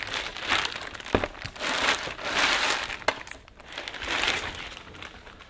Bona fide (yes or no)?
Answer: yes